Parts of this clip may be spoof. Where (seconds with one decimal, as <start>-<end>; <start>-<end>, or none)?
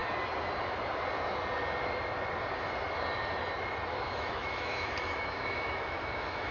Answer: 3.9-6.5